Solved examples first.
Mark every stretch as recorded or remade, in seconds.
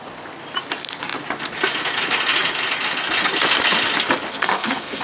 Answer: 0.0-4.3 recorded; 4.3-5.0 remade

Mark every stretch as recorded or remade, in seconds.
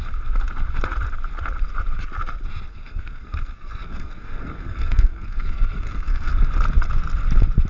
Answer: 0.0-2.7 recorded; 2.7-6.3 remade; 6.3-7.7 recorded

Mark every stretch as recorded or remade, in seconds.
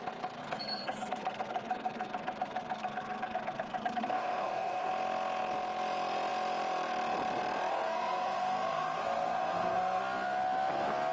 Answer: 0.0-0.4 recorded; 0.4-4.9 remade; 4.9-7.7 recorded; 7.7-10.0 remade; 10.0-11.1 recorded